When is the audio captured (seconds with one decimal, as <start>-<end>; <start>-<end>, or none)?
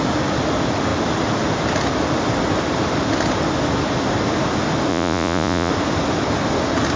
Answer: 0.0-4.9; 5.7-7.0